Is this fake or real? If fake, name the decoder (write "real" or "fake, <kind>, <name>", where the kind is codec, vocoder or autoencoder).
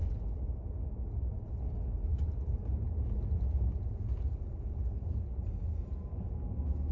real